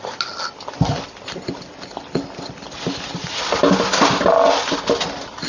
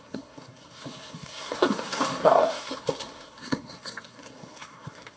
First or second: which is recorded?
first